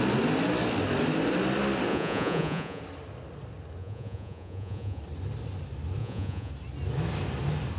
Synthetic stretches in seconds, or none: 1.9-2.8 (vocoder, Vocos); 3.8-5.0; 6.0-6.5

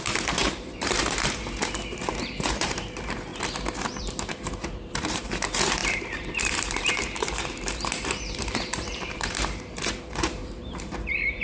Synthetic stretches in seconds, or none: 0.0-3.3 (vocoder, BigVGAN v2); 4.0-11.4

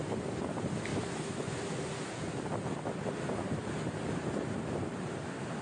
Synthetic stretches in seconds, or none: none

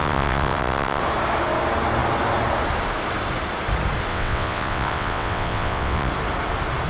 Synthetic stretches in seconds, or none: 0.0-1.0 (vocoder, WaveNeXt); 4.1-6.1

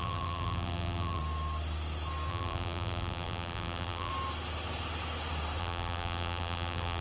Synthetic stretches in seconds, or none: 0.0-1.2 (vocoder, BigVGAN v2); 2.3-4.1; 5.6-7.0

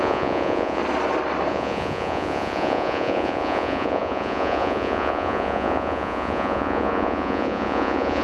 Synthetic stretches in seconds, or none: 0.0-0.8 (vocoder, Vocos); 1.5-8.2